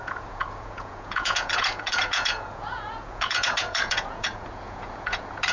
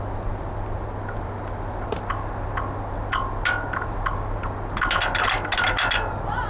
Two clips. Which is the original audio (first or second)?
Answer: second